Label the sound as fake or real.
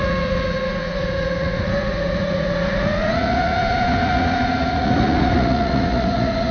fake